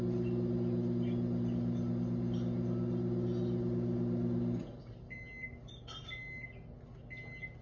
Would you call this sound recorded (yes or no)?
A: yes